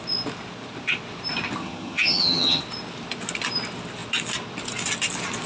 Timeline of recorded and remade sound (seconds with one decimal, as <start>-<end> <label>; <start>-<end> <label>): 0.0-1.6 recorded; 1.6-2.6 remade; 2.6-5.5 recorded